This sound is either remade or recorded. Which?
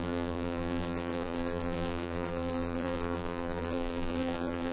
remade